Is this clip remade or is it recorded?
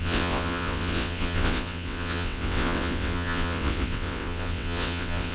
remade